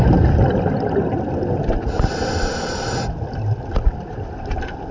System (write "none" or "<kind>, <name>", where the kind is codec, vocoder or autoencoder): none